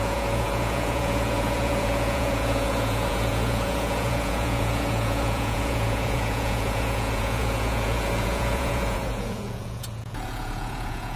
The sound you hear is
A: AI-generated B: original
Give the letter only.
A